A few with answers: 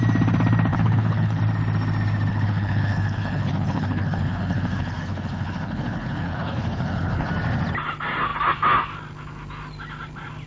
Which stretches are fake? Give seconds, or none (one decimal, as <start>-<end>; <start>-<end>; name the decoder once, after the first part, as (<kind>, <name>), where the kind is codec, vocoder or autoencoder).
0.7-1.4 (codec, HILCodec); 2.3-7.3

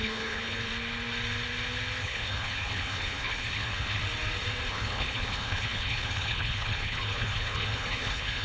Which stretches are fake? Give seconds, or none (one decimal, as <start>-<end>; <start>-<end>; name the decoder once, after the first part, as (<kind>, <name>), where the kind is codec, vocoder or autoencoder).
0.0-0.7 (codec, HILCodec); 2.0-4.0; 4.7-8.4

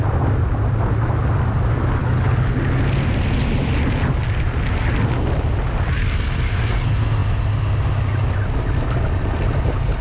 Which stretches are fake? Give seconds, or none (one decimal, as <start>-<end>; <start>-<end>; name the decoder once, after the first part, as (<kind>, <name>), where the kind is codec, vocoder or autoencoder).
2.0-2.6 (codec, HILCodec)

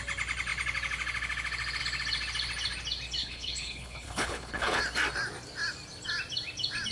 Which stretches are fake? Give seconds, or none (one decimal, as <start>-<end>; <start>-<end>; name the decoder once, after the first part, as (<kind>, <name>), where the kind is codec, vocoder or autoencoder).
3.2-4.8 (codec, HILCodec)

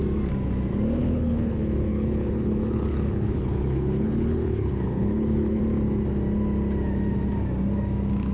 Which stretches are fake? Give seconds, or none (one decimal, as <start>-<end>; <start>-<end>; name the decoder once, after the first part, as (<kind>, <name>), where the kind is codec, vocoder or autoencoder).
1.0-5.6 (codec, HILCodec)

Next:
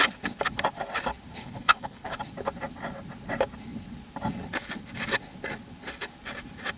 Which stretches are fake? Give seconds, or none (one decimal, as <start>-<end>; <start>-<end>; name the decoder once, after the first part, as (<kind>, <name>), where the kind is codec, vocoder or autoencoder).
1.4-2.2 (codec, HILCodec)

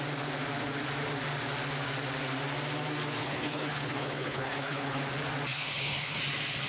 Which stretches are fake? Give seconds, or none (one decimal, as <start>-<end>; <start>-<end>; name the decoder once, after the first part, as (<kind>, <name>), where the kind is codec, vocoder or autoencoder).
3.2-5.0 (codec, HILCodec); 5.5-6.2

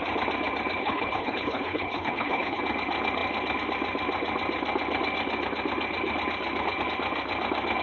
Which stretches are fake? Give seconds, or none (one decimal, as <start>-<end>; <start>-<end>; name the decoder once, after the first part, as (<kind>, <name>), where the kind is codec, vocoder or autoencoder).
0.8-2.6 (codec, HILCodec)